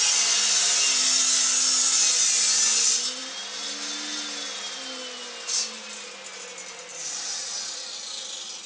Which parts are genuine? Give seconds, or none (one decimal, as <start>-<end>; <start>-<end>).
0.0-6.9; 7.5-8.7